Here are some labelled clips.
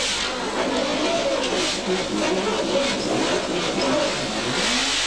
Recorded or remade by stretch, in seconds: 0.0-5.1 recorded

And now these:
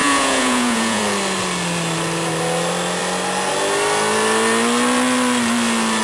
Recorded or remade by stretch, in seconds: 0.0-1.0 remade; 1.0-6.0 recorded

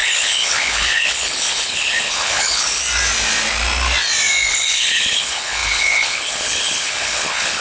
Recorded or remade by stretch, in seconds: 0.0-2.8 remade; 2.8-4.5 recorded; 4.5-7.6 remade

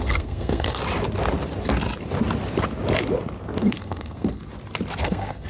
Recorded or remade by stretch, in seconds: 0.0-0.8 remade; 0.8-3.6 recorded; 3.6-4.4 remade; 4.4-5.0 recorded; 5.0-5.5 remade

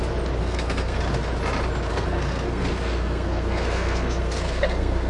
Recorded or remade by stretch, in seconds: 0.0-0.4 recorded; 0.4-1.0 remade; 1.0-1.9 recorded; 1.9-5.1 remade

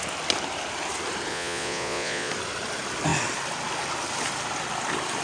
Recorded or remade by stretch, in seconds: 0.0-1.3 recorded; 1.3-2.3 remade; 2.3-5.2 recorded

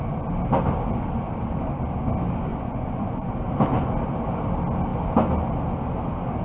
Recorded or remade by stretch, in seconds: 0.0-2.5 recorded; 2.5-3.3 remade; 3.3-6.4 recorded